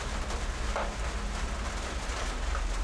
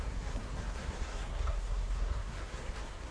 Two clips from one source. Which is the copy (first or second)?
second